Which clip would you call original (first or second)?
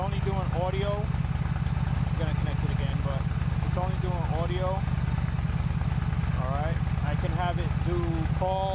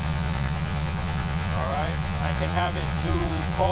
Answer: first